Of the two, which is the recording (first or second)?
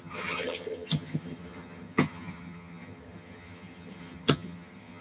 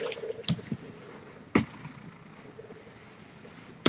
second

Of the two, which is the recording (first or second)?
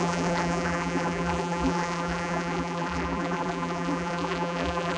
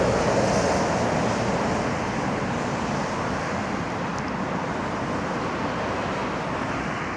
second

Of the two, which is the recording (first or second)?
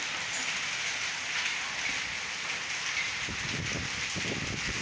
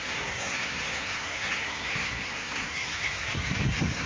first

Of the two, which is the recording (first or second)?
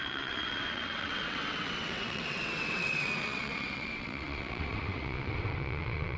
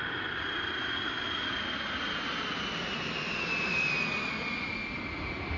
second